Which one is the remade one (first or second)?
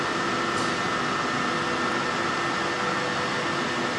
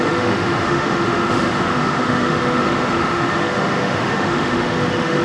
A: second